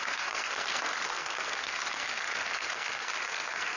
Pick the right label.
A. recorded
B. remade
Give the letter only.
B